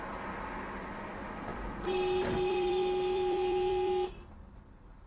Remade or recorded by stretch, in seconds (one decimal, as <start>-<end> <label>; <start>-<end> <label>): 0.0-1.5 recorded; 1.5-4.6 remade; 4.6-5.1 recorded